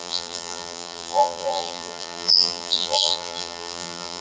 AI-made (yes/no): yes